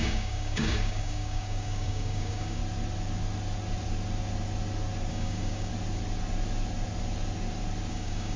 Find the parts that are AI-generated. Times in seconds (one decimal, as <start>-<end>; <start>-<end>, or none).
0.0-2.6; 5.1-5.7; 7.9-8.4

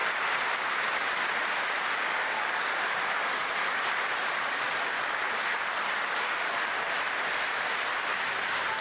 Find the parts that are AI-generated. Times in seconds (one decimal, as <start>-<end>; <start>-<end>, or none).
2.0-2.6